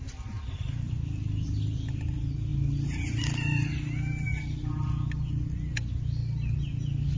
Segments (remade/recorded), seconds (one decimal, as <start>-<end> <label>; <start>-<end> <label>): 0.0-7.2 recorded